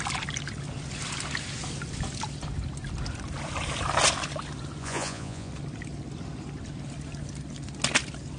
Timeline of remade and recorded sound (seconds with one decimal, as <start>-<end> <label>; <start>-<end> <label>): 0.0-4.8 recorded; 4.8-5.5 remade; 5.5-8.4 recorded